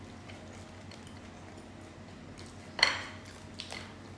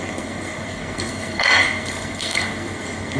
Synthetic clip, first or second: second